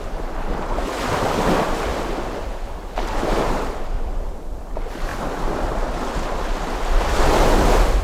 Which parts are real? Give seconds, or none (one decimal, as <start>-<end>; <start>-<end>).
1.9-2.9; 5.1-8.0